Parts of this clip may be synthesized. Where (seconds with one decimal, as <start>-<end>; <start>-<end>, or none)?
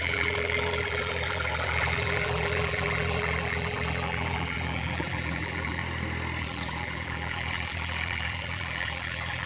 0.0-5.8; 6.4-9.5